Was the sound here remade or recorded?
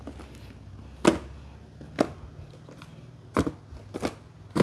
recorded